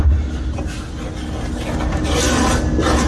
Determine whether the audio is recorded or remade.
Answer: recorded